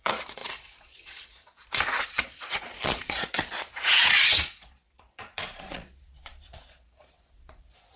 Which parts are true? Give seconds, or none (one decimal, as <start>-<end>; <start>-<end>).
none